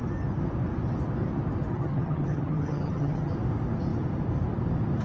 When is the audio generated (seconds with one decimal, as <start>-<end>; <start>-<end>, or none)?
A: 1.7-3.3